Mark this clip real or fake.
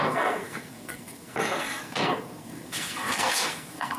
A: fake